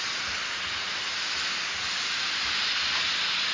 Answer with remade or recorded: recorded